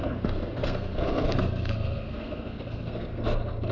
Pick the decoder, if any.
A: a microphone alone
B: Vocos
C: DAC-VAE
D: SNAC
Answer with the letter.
D